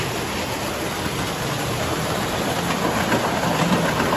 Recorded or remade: recorded